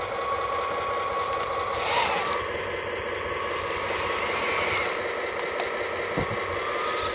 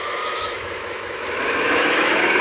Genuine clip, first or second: first